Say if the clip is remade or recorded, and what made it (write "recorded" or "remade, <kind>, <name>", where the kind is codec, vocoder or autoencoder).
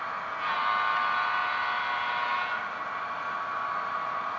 recorded